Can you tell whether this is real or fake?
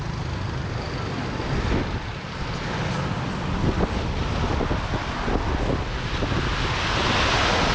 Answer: real